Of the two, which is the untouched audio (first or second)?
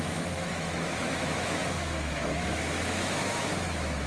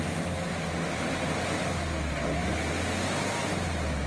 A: second